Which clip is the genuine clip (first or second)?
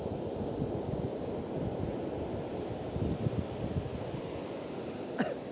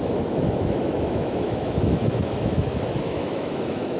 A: first